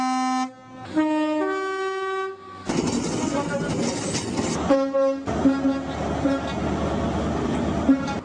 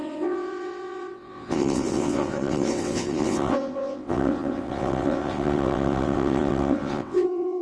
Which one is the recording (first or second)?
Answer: first